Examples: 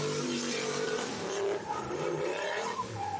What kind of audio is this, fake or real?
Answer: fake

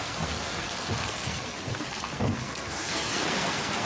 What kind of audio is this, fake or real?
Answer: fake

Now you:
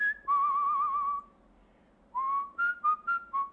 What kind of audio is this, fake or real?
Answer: real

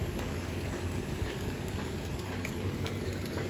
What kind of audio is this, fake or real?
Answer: fake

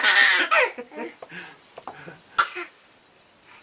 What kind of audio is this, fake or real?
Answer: real